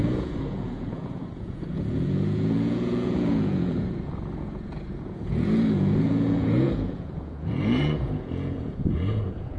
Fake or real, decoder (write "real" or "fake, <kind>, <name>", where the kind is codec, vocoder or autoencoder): fake, vocoder, Vocos